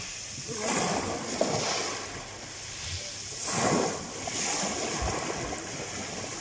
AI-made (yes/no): no